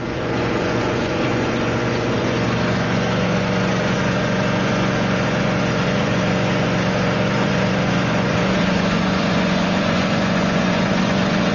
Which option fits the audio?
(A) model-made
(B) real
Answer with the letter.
A